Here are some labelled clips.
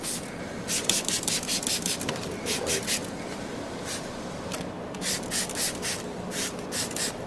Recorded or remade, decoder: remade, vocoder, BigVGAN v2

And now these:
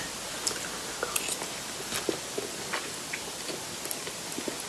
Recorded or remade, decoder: recorded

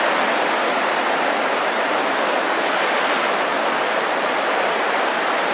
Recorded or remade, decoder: recorded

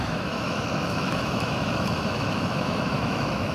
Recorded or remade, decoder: remade, autoencoder, DAC-VAE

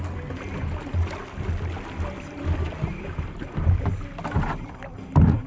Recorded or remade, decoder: recorded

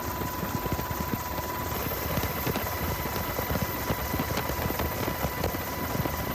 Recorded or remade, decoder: recorded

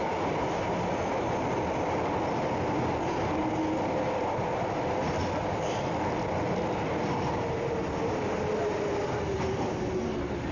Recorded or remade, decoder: recorded